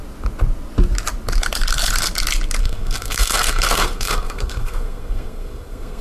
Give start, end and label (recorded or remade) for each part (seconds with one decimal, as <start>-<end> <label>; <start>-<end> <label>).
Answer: 0.0-2.6 recorded; 2.6-6.0 remade